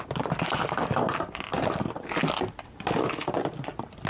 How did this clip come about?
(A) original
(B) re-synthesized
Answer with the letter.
A